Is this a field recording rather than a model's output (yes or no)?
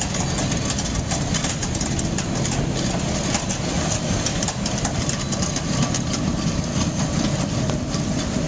yes